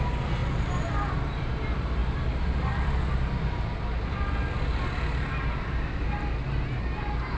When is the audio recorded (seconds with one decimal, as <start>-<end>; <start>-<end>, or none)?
0.0-7.4